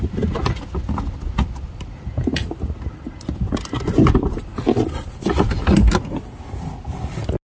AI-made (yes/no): no